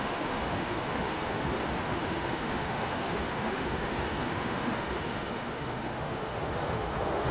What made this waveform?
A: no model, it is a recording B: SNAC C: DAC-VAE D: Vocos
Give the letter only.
C